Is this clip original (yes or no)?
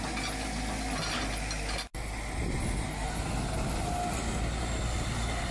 yes